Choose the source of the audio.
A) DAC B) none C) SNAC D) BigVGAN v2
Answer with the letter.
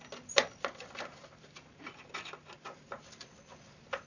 B